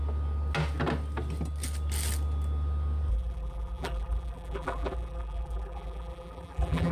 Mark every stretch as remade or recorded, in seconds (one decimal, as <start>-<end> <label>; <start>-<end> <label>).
0.0-3.1 recorded; 3.1-6.9 remade